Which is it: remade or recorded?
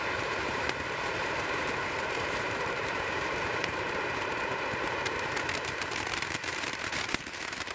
remade